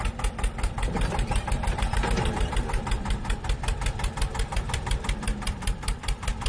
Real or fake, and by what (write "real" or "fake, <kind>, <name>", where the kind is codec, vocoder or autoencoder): fake, vocoder, BigVGAN v2